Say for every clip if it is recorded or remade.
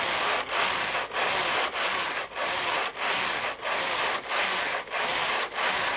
recorded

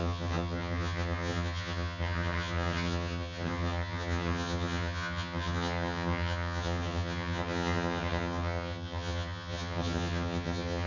remade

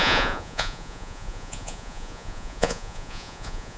remade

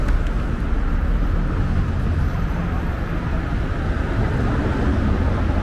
recorded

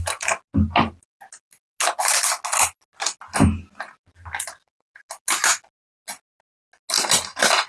recorded